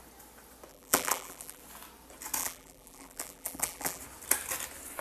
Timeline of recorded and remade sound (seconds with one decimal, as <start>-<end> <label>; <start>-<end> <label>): 0.0-0.7 recorded; 0.7-1.6 remade; 1.6-2.4 recorded; 2.4-4.0 remade; 4.0-5.0 recorded